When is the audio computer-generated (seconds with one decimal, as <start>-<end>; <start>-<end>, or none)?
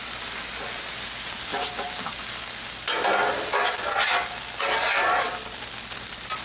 none